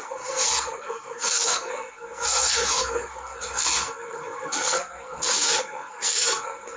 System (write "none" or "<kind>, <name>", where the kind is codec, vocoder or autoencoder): codec, SNAC